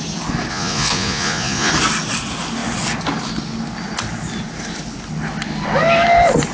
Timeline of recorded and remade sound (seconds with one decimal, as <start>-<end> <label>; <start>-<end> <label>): 0.0-0.5 recorded; 0.5-1.7 remade; 1.7-6.5 recorded